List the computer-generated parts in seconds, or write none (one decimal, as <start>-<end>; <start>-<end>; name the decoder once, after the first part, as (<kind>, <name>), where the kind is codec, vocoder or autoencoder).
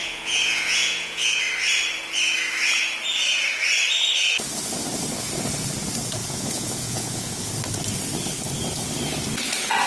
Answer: 0.0-1.4 (vocoder, Vocos); 6.2-7.5